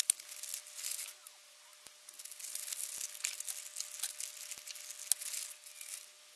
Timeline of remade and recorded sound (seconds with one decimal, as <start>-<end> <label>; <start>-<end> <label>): 0.0-6.4 recorded